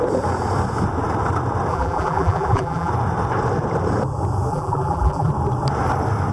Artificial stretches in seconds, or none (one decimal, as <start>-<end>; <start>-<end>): 1.7-2.9; 4.5-5.3